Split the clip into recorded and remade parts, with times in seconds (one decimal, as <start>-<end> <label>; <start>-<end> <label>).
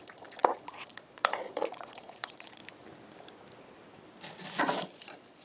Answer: 0.0-2.6 remade; 2.6-4.6 recorded; 4.6-5.4 remade